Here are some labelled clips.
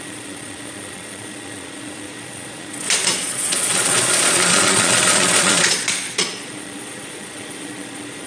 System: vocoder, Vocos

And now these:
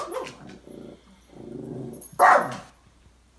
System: none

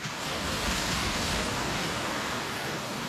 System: codec, DAC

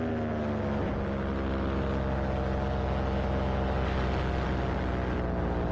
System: none